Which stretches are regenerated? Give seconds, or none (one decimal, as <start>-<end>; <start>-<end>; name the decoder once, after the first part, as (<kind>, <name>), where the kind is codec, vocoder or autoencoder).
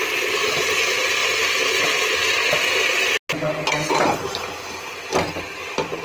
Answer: 1.2-2.2 (vocoder, BigVGAN v2)